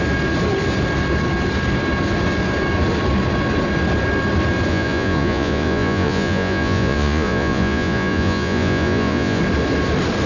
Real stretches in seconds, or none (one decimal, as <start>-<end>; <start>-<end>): 0.0-4.7; 9.4-10.3